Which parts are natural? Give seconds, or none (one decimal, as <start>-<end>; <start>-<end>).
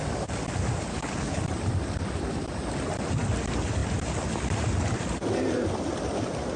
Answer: 0.0-0.9; 1.4-6.6